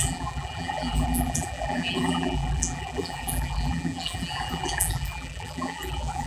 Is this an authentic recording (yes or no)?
no